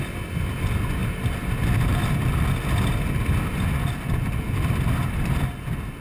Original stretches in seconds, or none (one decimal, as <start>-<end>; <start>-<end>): 0.0-6.0